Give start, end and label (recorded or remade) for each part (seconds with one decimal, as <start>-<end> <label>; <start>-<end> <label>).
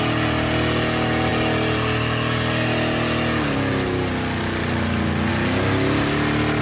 0.0-6.6 recorded